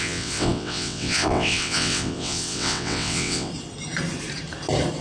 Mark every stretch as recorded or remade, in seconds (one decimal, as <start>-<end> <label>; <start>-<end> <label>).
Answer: 0.0-3.5 remade; 3.5-5.0 recorded